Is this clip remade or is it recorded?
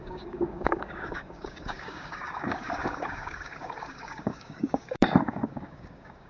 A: remade